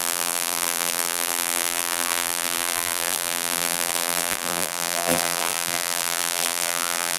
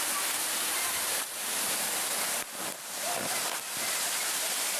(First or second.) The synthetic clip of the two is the first